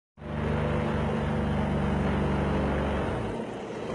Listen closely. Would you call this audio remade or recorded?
recorded